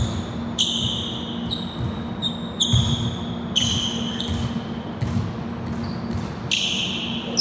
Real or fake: real